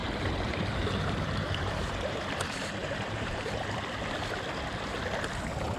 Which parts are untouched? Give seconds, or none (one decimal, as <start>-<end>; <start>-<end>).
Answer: 2.3-2.8; 3.9-5.8